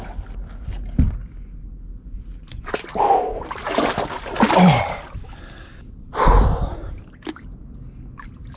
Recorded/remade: recorded